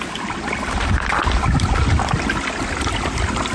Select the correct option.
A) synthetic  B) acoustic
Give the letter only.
B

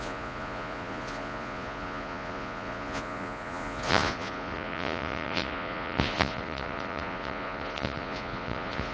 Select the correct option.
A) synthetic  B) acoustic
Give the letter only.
A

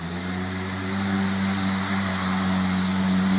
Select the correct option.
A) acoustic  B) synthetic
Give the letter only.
A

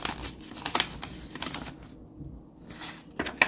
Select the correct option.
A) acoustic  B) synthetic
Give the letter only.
A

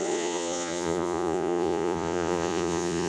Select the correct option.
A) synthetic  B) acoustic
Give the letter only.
A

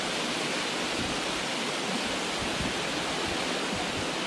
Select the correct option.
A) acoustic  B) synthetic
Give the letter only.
A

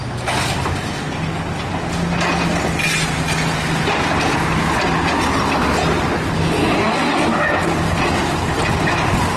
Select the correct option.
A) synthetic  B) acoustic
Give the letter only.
B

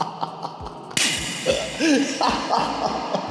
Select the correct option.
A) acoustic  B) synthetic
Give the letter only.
A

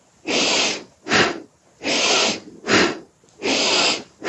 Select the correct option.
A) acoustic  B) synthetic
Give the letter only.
A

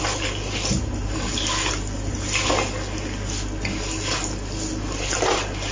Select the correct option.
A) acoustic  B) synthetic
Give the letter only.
A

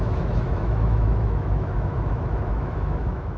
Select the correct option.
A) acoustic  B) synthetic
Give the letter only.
B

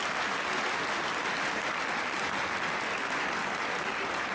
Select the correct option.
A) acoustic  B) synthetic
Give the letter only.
A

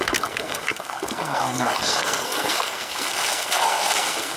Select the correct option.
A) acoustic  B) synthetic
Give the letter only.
B